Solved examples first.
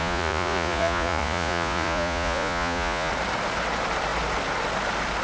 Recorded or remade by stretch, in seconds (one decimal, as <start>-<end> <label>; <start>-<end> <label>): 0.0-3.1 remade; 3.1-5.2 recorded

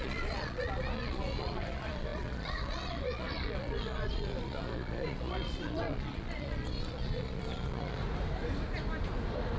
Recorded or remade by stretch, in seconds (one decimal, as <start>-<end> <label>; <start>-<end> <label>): 0.0-8.0 remade; 8.0-9.6 recorded

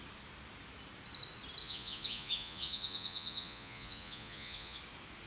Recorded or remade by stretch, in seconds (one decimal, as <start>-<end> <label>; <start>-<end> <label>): 0.0-1.6 recorded; 1.6-4.8 remade; 4.8-5.3 recorded

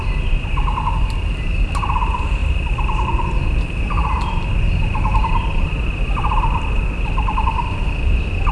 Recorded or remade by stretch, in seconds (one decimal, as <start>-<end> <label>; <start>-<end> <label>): 0.0-8.5 recorded